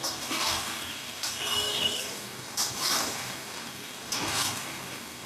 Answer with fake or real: fake